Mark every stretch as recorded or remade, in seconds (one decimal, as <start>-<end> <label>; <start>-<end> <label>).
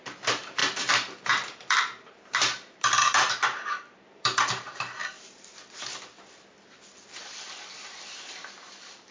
0.0-5.0 remade; 5.0-8.1 recorded; 8.1-9.1 remade